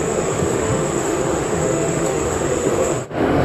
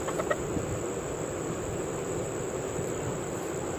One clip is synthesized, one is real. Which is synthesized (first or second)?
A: first